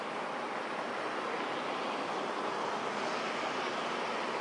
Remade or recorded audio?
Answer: recorded